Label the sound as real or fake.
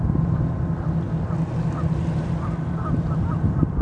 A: real